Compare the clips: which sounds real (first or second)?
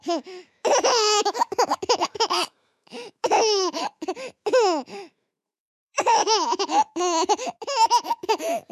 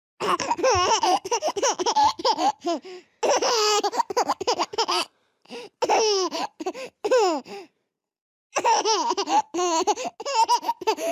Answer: second